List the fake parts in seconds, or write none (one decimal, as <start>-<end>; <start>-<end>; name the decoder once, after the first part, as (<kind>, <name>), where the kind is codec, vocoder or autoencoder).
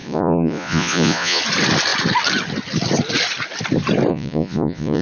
0.0-1.4 (vocoder, Vocos); 4.1-5.0